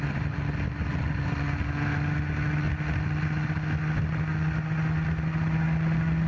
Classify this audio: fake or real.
real